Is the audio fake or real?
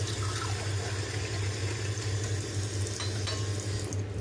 real